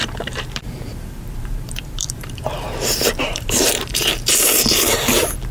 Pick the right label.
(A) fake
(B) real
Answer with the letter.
A